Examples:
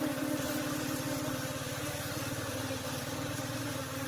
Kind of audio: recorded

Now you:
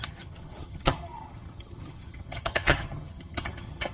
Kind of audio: remade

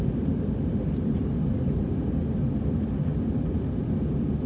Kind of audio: recorded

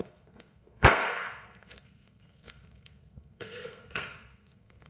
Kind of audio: remade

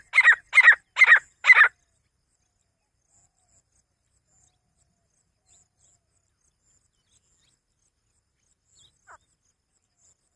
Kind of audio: recorded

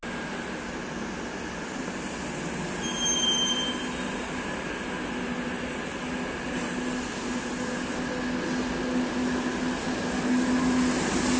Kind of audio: recorded